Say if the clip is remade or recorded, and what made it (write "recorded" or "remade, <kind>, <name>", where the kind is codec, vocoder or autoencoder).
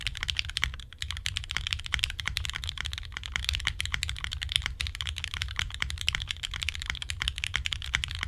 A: remade, vocoder, BigVGAN v2